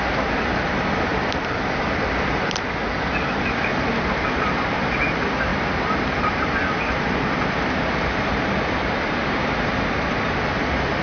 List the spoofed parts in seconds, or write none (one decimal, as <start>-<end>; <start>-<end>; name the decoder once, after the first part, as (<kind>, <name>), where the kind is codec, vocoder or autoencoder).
none